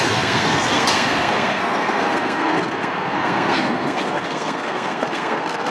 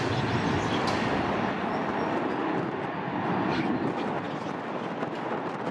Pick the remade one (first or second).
first